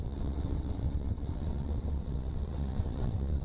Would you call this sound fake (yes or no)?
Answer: yes